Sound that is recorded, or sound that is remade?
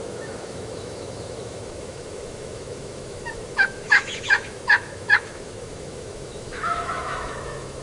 remade